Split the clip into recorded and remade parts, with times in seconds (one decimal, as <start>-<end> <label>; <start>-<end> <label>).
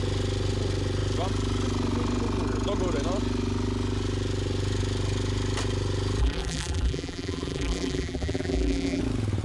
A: 0.0-6.2 recorded; 6.2-9.0 remade; 9.0-9.4 recorded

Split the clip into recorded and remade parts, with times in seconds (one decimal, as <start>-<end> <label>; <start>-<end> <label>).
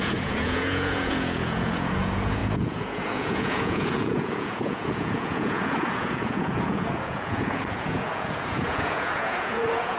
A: 0.0-10.0 remade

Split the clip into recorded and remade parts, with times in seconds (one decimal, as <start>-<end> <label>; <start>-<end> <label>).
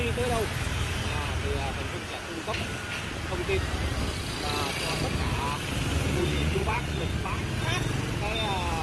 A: 0.0-5.9 recorded; 5.9-7.1 remade; 7.1-8.8 recorded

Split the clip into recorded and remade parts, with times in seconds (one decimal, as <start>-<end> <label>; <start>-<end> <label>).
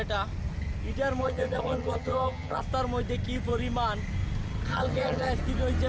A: 0.0-1.2 recorded; 1.2-2.6 remade; 2.6-4.7 recorded; 4.7-5.3 remade; 5.3-5.9 recorded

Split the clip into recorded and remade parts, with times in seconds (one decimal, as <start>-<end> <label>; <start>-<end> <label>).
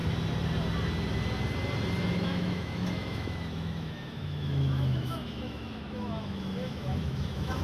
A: 0.0-2.1 recorded; 2.1-7.6 remade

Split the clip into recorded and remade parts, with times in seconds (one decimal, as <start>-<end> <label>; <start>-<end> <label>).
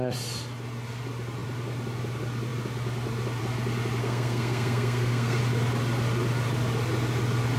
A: 0.0-4.0 recorded; 4.0-5.4 remade; 5.4-7.6 recorded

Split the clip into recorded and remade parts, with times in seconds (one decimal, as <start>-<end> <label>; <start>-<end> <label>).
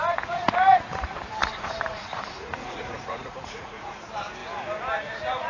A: 0.0-1.4 recorded; 1.4-4.0 remade; 4.0-5.5 recorded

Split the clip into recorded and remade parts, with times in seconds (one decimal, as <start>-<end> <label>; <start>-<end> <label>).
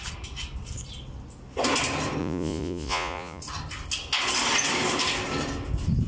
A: 0.0-2.2 recorded; 2.2-3.4 remade; 3.4-6.1 recorded